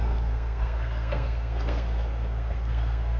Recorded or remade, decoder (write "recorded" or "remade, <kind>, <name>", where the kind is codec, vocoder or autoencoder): remade, codec, SNAC